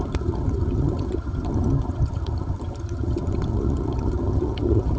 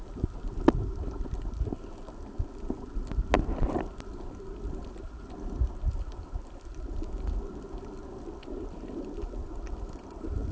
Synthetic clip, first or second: first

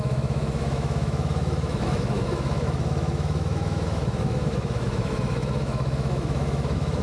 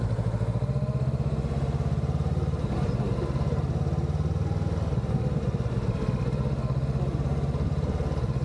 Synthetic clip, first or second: first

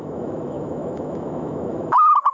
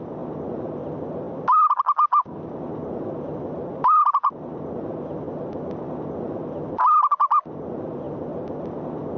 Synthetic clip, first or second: first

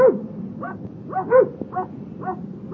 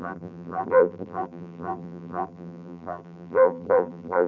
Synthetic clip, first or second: second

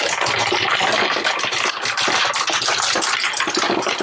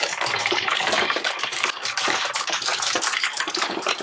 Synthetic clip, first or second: second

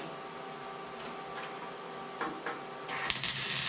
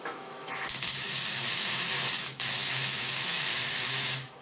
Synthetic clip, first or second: second